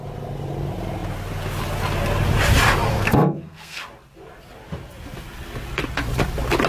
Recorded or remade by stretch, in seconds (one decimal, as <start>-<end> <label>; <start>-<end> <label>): 0.0-2.9 recorded; 2.9-3.8 remade; 3.8-6.7 recorded